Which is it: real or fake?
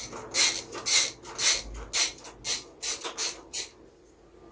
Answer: real